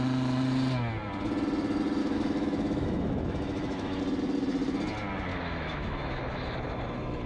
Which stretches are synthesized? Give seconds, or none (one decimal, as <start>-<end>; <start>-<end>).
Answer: 2.0-4.0; 5.3-6.5